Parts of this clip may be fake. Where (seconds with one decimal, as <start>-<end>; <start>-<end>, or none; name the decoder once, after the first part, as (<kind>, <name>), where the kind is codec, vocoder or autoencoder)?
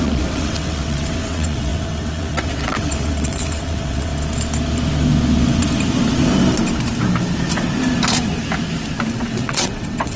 0.0-4.1 (vocoder, WaveNeXt); 9.1-10.2